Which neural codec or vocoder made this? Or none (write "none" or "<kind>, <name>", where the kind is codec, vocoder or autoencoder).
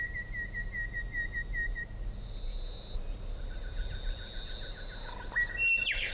none